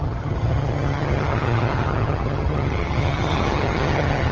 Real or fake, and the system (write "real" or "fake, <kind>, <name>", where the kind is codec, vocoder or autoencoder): fake, vocoder, HiFi-GAN